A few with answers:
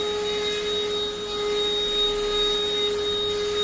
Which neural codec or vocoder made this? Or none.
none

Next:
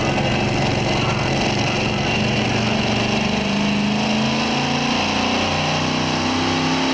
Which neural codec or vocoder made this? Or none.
none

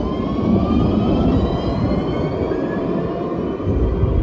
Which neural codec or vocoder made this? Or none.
none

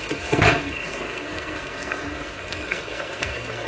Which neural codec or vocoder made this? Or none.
codec, SNAC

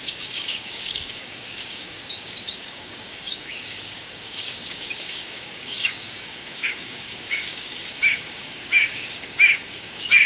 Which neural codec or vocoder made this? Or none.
codec, DAC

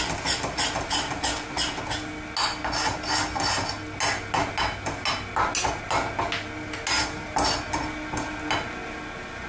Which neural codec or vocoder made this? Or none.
none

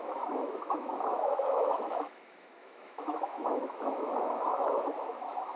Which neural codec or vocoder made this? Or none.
autoencoder, DAC-VAE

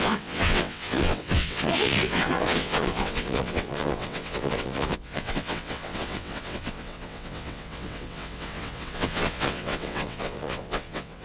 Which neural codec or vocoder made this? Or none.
vocoder, WaveNeXt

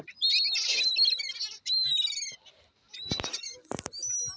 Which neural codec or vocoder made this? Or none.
none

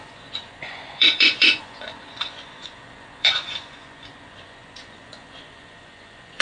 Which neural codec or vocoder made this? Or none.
vocoder, Vocos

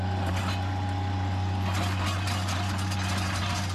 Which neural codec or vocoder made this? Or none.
none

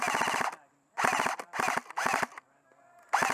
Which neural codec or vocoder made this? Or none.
none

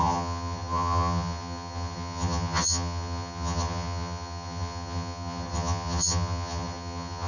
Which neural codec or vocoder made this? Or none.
vocoder, HiFi-GAN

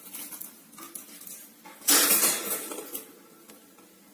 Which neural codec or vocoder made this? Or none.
none